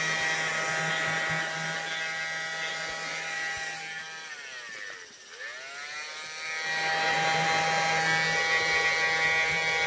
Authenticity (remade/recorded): recorded